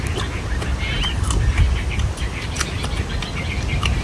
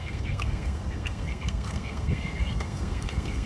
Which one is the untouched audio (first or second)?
first